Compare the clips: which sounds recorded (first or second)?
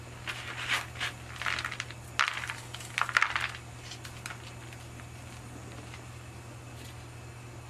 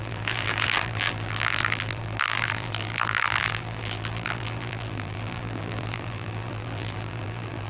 first